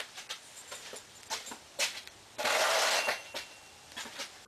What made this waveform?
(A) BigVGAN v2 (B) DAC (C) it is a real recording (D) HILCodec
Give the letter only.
C